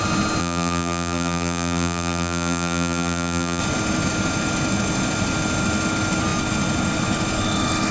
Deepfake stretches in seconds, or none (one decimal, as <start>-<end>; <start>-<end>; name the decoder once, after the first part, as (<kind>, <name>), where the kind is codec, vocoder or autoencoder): 0.4-3.6 (vocoder, BigVGAN v2)